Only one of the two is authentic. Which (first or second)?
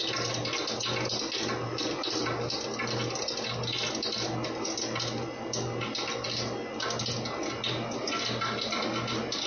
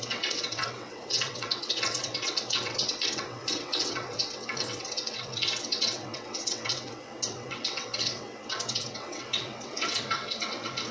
first